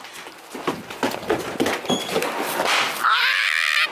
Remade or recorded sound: recorded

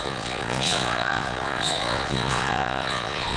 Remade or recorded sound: remade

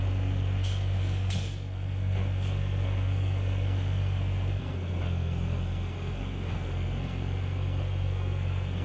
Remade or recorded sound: remade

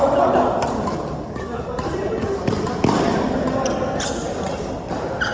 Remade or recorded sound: recorded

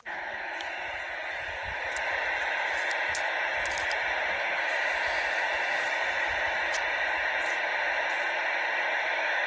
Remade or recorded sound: recorded